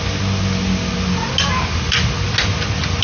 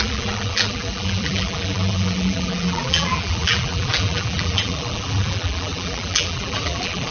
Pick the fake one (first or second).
second